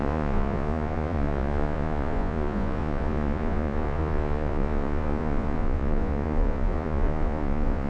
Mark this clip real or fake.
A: fake